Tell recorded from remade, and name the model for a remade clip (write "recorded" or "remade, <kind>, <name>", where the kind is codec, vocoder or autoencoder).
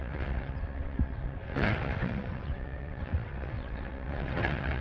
remade, vocoder, WaveNeXt